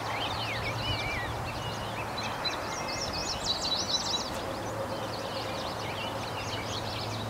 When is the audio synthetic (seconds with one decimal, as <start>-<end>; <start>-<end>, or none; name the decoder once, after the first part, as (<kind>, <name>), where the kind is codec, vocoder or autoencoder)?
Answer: none